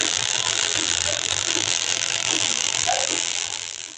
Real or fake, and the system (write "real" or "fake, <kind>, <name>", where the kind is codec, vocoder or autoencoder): fake, vocoder, BigVGAN v2